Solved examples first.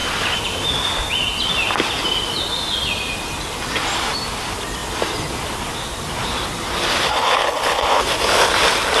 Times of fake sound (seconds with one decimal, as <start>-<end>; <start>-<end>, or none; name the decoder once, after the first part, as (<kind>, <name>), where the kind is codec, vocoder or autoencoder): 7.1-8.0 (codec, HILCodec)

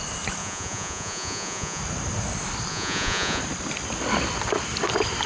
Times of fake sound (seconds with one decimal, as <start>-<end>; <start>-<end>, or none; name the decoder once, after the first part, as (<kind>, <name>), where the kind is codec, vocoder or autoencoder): 0.4-1.8 (vocoder, Vocos); 2.7-3.4

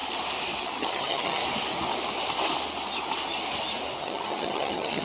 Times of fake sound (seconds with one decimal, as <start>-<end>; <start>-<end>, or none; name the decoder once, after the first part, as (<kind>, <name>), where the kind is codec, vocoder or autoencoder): 0.6-1.4 (vocoder, HiFi-GAN); 4.0-5.0

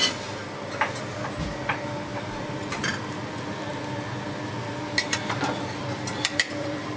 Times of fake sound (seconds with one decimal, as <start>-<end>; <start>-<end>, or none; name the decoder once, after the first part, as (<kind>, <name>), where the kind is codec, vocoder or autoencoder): 1.0-7.0 (vocoder, BigVGAN v2)